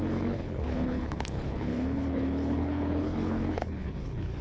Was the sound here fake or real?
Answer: fake